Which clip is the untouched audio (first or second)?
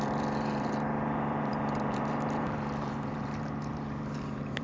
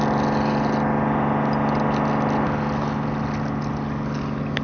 second